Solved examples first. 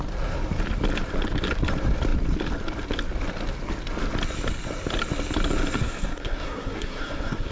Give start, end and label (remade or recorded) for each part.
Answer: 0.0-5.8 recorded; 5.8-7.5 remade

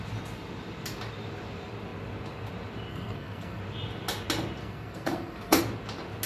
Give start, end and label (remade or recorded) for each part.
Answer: 0.0-2.9 recorded; 2.9-3.6 remade; 3.6-4.6 recorded; 4.6-5.6 remade; 5.6-6.3 recorded

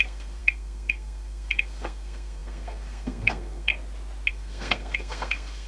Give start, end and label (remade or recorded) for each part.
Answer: 0.0-3.7 remade; 3.7-4.3 recorded; 4.3-5.7 remade

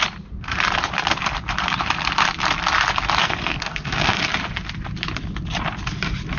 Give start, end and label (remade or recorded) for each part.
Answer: 0.0-3.2 recorded; 3.2-4.2 remade; 4.2-6.4 recorded

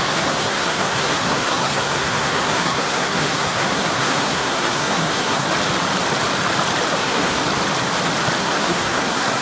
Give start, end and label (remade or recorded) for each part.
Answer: 0.0-5.5 remade; 5.5-6.9 recorded; 6.9-7.4 remade; 7.4-8.4 recorded; 8.4-9.4 remade